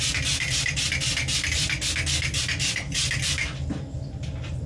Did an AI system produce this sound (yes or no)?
no